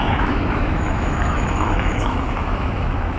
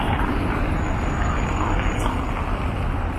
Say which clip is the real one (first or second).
second